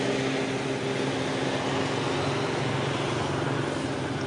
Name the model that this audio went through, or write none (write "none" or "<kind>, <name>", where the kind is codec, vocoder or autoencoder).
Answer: none